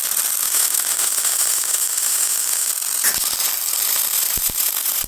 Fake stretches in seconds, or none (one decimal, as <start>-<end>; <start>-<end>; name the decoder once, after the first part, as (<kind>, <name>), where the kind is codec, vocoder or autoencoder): 0.4-2.7 (autoencoder, DAC-VAE)